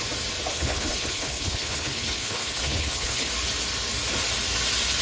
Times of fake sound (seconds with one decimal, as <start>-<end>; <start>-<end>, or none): 0.5-3.3